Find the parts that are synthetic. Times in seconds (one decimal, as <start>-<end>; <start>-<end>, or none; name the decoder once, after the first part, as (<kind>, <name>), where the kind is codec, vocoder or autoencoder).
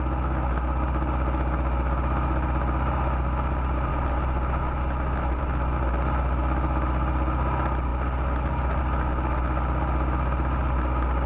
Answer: none